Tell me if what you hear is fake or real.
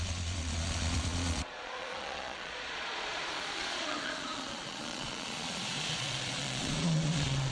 fake